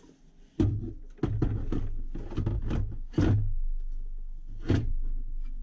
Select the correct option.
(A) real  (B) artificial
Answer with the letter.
A